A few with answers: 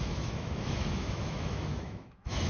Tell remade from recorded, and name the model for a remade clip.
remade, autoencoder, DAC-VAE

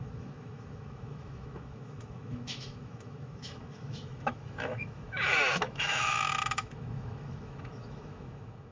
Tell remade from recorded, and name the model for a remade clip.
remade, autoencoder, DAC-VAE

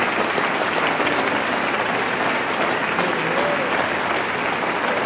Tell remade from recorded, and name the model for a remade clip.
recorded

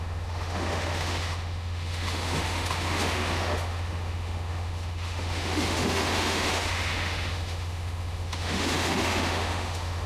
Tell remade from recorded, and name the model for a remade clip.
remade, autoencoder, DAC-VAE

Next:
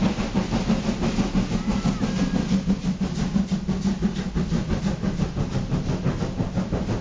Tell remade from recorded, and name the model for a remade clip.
recorded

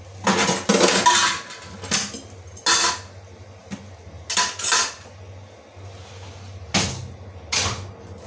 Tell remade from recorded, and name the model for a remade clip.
recorded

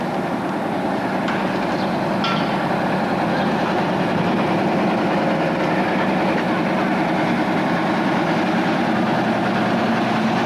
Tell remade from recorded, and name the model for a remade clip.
recorded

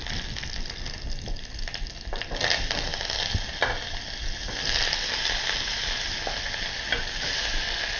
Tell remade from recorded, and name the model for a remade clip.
recorded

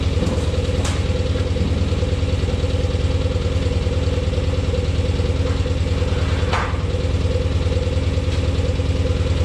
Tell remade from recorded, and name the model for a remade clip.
recorded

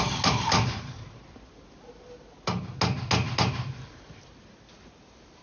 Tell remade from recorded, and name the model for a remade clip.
recorded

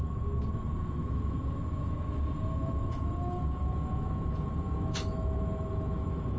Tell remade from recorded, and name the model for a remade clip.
remade, autoencoder, DAC-VAE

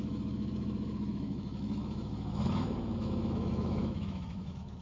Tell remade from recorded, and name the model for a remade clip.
remade, autoencoder, DAC-VAE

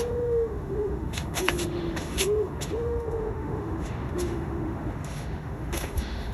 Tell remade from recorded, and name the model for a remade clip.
remade, autoencoder, DAC-VAE